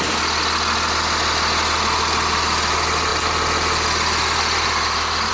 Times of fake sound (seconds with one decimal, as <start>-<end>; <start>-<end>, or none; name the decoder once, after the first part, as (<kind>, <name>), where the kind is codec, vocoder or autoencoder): none